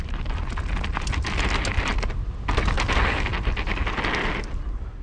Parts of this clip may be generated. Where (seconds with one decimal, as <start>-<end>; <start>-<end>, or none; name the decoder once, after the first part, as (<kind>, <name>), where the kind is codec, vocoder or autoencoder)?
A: none